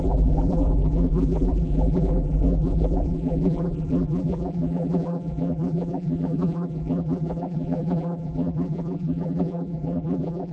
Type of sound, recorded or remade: remade